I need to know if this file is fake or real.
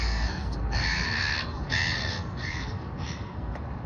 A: fake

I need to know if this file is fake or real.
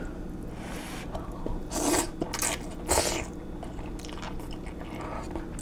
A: real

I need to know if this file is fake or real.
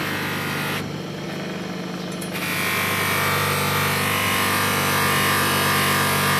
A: real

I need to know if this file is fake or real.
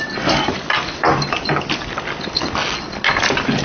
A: real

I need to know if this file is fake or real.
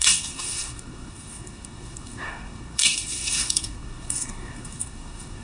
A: fake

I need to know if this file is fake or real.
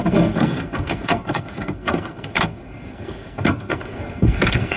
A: fake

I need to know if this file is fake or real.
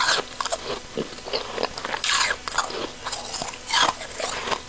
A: real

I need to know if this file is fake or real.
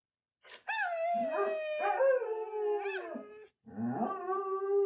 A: real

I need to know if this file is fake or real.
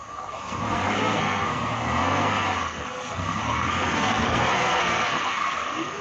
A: fake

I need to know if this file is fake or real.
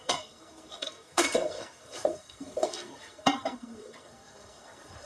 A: fake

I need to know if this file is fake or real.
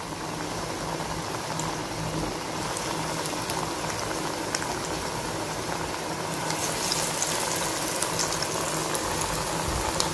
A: real